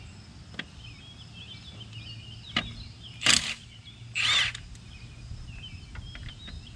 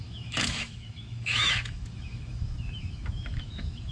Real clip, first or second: first